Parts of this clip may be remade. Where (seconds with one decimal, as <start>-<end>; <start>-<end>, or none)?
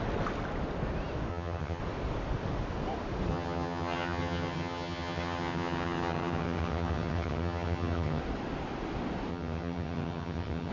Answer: 1.3-1.8; 3.3-8.2; 9.3-10.7